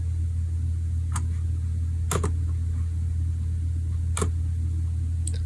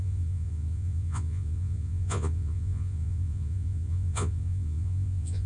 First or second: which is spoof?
second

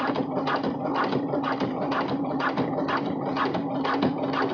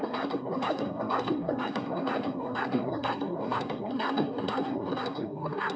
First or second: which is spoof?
second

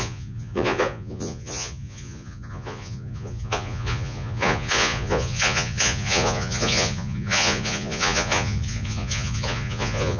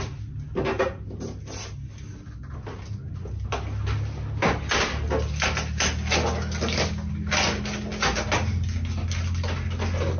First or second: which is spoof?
first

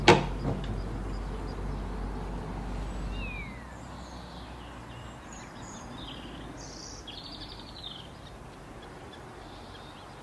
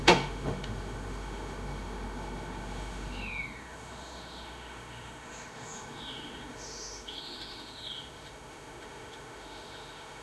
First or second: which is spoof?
second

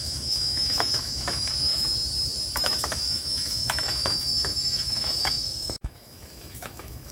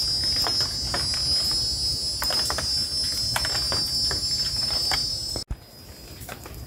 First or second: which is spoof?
first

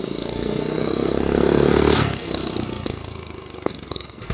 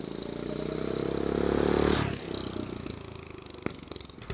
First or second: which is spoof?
first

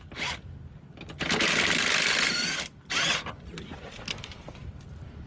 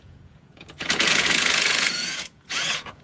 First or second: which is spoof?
second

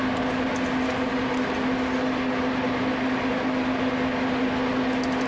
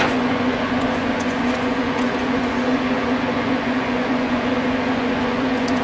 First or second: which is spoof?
second